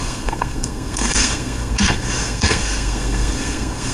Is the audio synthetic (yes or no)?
yes